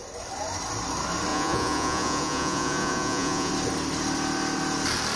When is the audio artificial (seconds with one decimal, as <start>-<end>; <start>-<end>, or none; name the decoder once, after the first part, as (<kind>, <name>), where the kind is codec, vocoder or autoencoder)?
1.3-3.5 (vocoder, Vocos)

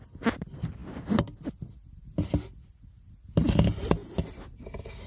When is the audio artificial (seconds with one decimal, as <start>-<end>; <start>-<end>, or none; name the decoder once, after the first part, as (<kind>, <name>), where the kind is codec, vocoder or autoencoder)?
none

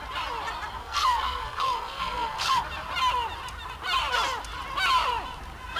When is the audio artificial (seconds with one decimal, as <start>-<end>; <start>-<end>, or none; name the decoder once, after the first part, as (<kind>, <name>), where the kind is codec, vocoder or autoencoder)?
0.8-2.6 (codec, SNAC)